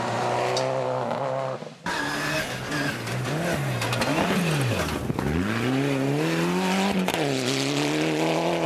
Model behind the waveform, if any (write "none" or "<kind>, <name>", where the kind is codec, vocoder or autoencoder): none